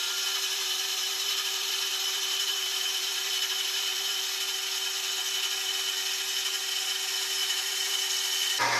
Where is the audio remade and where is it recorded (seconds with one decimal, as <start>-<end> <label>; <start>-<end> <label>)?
0.0-4.2 remade; 4.2-7.4 recorded; 7.4-8.0 remade; 8.0-8.8 recorded